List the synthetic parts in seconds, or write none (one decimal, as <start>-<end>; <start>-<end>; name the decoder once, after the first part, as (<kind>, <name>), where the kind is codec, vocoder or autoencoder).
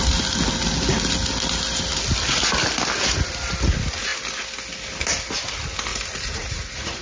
5.9-7.0 (vocoder, Vocos)